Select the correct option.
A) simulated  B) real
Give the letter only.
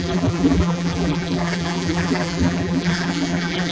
A